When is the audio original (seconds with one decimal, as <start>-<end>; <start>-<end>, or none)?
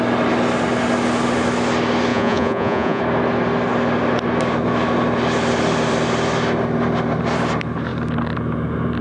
0.0-2.1; 3.0-9.0